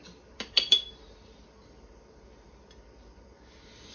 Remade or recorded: recorded